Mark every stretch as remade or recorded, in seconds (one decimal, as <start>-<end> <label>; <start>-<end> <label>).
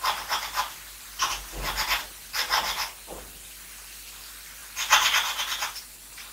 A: 0.0-4.6 remade; 4.6-5.4 recorded; 5.4-6.3 remade